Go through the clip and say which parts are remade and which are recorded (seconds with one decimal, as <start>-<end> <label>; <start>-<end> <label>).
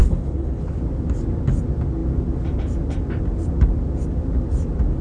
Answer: 0.0-0.8 remade; 0.8-5.0 recorded